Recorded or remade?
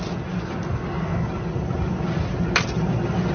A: recorded